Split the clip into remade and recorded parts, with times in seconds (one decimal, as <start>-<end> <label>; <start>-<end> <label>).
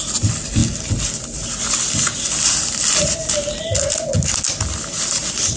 0.0-5.6 recorded